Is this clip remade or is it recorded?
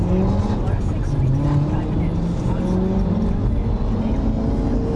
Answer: recorded